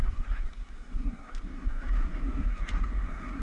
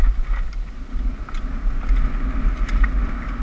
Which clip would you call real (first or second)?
second